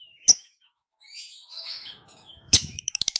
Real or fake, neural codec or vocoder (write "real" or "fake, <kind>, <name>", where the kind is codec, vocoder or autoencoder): fake, autoencoder, DAC-VAE